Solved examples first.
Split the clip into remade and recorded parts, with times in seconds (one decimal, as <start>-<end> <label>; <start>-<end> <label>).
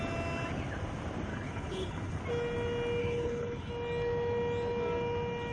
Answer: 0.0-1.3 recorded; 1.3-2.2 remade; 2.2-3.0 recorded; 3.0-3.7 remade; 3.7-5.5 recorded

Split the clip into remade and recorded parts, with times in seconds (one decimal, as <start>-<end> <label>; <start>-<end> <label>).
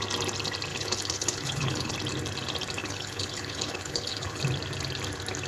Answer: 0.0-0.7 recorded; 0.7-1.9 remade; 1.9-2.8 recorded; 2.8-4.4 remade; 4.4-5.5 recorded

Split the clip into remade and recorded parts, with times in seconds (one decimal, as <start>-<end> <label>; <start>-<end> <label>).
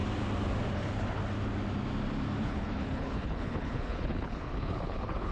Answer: 0.0-0.7 recorded; 0.7-1.2 remade; 1.2-2.4 recorded; 2.4-5.3 remade